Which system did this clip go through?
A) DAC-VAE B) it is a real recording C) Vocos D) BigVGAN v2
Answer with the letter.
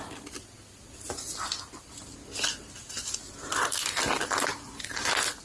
B